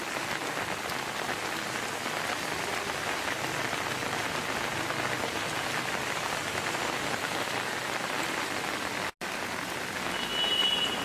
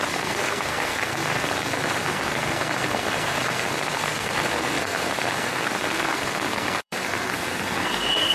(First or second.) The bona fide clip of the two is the first